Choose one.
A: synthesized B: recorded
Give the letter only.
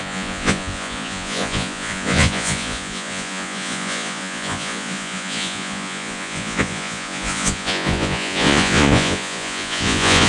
A